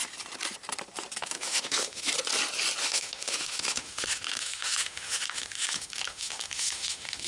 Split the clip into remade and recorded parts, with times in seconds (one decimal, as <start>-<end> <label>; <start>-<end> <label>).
0.0-1.2 recorded; 1.2-2.1 remade; 2.1-2.8 recorded; 2.8-7.3 remade